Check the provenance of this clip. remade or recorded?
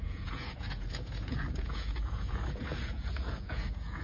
remade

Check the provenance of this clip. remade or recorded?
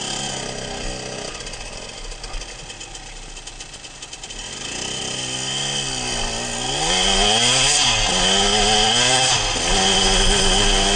recorded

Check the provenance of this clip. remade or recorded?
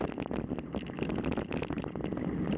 recorded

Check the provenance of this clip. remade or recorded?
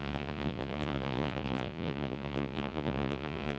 remade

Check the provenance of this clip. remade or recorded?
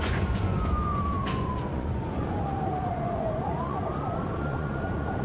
remade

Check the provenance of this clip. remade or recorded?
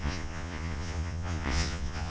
remade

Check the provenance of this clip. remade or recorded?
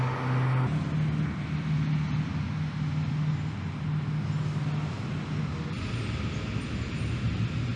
recorded